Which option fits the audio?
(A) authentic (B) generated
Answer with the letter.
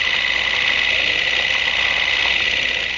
A